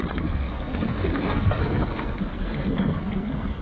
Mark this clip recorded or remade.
remade